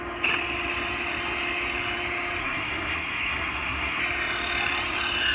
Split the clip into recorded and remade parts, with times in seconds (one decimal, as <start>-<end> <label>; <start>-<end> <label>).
0.0-2.4 recorded; 2.4-4.0 remade; 4.0-5.3 recorded